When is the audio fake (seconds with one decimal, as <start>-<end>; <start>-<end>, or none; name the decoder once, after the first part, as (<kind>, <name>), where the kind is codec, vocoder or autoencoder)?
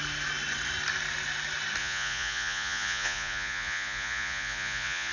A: 1.8-5.1 (vocoder, Vocos)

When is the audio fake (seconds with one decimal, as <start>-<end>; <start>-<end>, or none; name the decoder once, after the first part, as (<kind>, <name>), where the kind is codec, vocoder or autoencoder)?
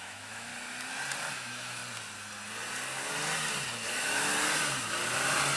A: 0.0-0.5 (autoencoder, DAC-VAE); 1.3-1.8; 3.9-4.3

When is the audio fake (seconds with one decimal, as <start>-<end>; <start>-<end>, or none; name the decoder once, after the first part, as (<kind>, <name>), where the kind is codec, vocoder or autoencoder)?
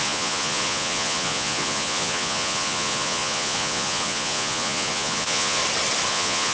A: 0.0-5.6 (vocoder, Vocos); 6.1-6.5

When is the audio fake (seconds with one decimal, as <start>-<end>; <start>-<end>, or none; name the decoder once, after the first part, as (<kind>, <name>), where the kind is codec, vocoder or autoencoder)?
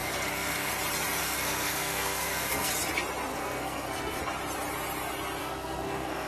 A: 0.0-0.7 (codec, SNAC); 1.2-2.7; 3.3-4.2; 5.4-6.3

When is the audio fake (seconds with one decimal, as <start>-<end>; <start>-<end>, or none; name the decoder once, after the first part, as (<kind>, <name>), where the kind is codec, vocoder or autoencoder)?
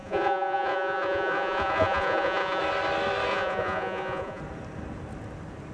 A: 0.0-2.6 (vocoder, Vocos); 3.3-4.4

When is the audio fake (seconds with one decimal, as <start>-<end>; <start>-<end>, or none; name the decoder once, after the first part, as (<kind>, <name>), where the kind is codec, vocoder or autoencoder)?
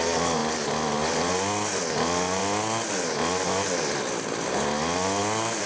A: none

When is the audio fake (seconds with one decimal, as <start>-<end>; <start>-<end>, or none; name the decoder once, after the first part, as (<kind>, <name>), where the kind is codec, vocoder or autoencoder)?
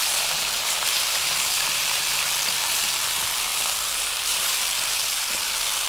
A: 0.0-2.0 (vocoder, BigVGAN v2)